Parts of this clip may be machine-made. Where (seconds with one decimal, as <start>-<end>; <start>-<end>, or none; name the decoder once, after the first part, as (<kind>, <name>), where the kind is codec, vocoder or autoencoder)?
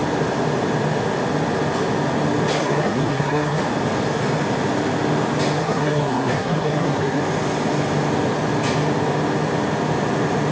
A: 2.5-3.6 (codec, SNAC); 5.6-7.2